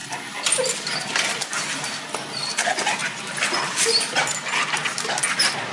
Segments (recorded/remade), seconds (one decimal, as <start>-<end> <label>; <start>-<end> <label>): 0.0-5.7 recorded